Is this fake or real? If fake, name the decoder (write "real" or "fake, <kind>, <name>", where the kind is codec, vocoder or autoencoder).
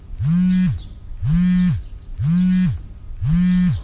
real